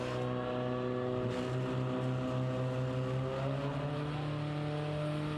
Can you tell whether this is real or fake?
real